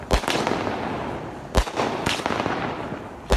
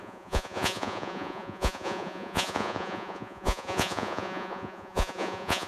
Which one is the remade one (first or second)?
second